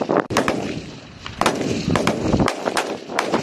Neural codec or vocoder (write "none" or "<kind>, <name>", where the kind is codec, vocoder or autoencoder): vocoder, BigVGAN v2